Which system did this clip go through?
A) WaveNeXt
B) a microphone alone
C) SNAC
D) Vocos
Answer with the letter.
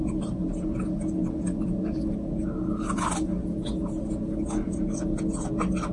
B